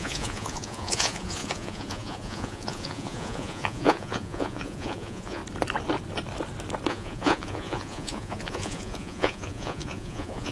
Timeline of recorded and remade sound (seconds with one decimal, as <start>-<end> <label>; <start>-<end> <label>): 0.0-5.4 remade; 5.4-6.9 recorded; 6.9-10.5 remade